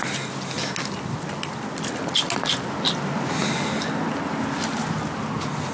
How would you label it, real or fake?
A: real